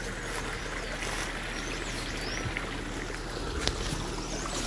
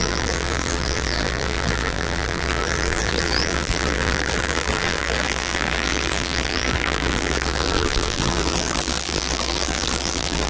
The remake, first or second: second